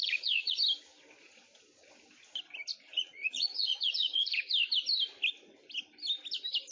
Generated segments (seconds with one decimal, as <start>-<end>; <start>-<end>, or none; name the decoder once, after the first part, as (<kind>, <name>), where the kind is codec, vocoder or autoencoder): 0.0-0.6 (vocoder, Vocos); 2.7-4.5